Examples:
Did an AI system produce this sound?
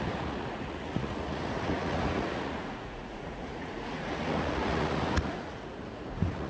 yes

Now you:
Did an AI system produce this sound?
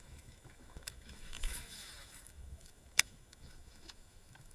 yes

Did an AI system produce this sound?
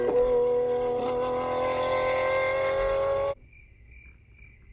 no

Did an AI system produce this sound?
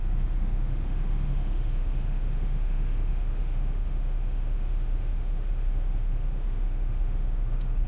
yes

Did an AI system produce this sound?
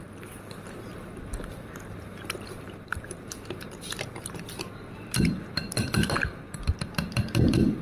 yes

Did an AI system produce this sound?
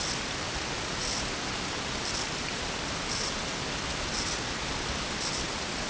no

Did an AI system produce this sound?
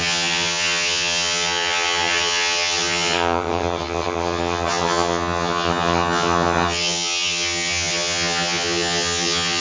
yes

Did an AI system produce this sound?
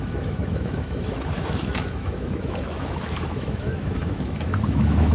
yes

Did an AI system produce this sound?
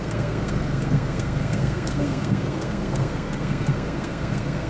yes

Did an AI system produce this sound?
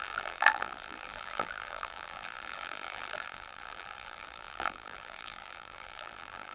yes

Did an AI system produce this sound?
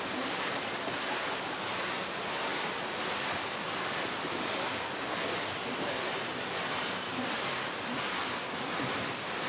no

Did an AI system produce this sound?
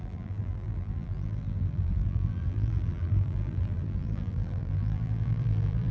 yes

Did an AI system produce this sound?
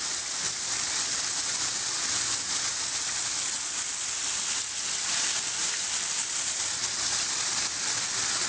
no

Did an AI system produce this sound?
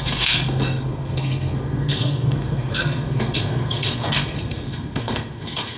yes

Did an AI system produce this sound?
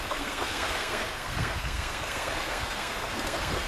yes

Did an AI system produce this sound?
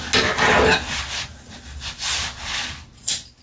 no